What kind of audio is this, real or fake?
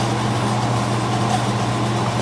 real